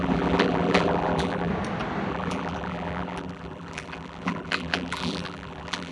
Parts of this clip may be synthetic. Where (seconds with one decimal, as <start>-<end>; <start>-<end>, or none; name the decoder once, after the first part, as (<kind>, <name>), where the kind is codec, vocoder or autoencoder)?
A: 0.0-1.5 (vocoder, BigVGAN v2); 2.1-5.9